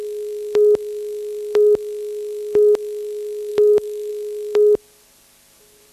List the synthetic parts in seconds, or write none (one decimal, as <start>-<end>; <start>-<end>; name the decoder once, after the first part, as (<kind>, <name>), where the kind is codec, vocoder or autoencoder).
3.5-4.1 (autoencoder, DAC-VAE)